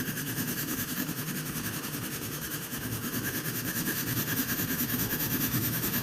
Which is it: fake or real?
fake